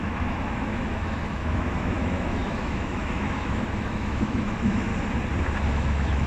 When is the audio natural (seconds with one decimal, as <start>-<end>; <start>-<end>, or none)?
4.9-5.7